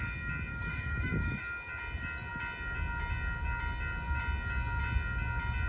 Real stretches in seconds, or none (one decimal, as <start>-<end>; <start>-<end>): 0.0-0.5; 1.4-5.7

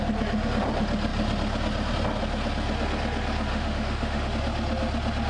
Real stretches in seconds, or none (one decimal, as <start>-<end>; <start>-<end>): 0.0-3.5; 4.3-5.3

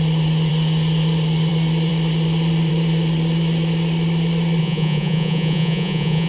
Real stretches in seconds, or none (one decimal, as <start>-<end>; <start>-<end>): 0.0-4.6

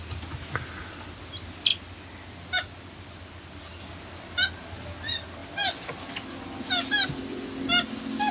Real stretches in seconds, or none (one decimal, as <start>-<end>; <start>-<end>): 0.0-8.3

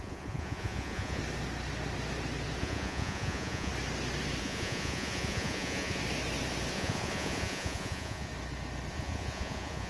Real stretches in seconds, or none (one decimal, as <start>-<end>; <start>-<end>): 1.2-2.6; 3.7-4.4; 6.0-6.7; 8.3-8.9